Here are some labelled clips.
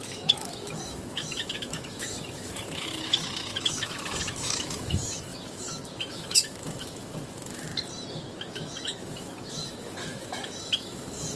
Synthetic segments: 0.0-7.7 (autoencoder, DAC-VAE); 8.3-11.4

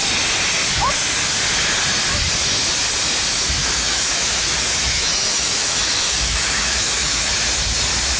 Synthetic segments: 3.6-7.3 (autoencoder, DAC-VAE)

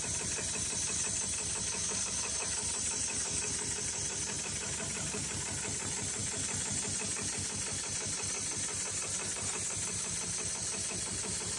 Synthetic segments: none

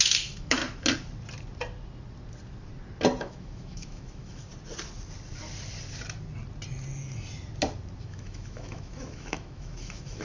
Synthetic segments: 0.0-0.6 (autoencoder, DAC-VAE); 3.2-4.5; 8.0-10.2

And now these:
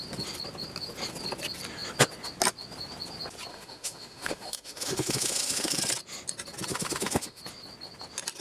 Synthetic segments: 3.5-5.8 (autoencoder, DAC-VAE); 6.7-7.4

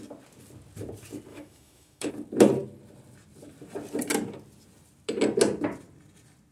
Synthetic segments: 1.3-2.1 (autoencoder, DAC-VAE)

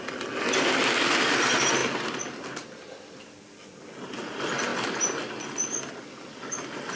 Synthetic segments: none